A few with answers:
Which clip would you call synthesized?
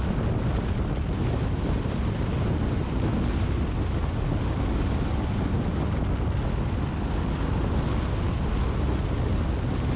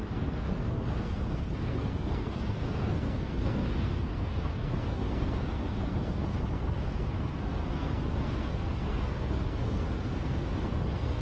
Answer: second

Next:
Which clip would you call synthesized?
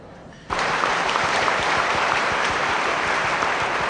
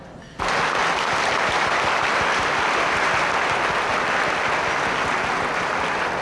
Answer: first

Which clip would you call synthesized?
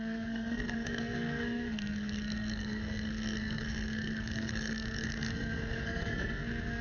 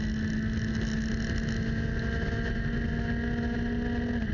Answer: first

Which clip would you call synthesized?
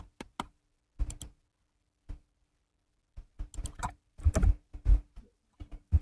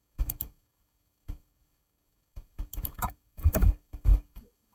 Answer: second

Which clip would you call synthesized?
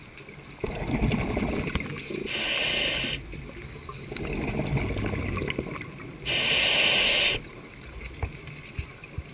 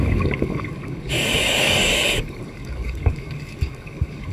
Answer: second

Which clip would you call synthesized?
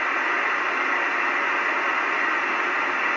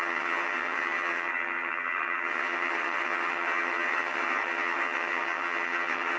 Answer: second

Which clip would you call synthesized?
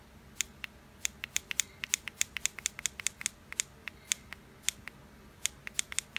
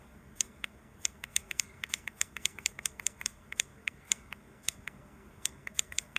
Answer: second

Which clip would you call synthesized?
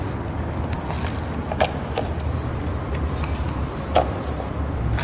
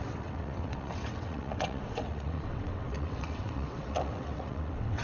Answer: second